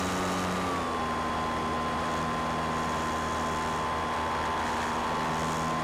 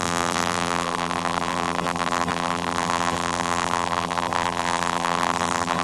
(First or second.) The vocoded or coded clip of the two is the second